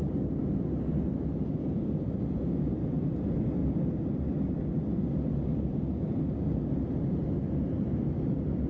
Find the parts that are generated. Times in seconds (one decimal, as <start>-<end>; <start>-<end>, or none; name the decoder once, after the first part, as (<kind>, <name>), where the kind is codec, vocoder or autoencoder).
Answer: none